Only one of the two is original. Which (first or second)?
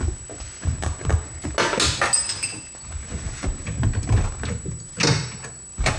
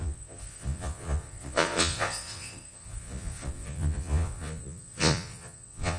first